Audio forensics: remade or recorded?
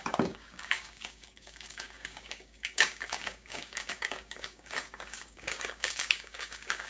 remade